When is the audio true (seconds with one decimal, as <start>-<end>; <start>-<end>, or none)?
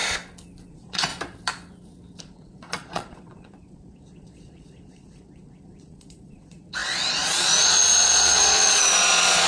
0.0-0.7; 1.1-2.2